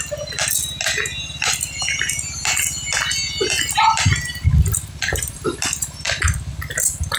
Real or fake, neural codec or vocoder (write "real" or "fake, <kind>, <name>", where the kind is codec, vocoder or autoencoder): real